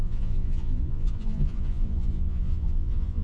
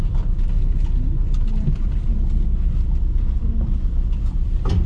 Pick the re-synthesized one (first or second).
first